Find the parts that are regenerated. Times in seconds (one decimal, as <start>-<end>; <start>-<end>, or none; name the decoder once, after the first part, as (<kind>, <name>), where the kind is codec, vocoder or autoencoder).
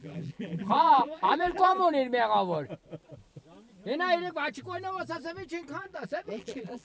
0.0-1.7 (vocoder, BigVGAN v2); 5.8-6.8